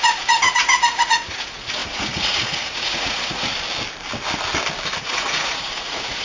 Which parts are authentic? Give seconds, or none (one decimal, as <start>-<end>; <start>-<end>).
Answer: 3.5-5.0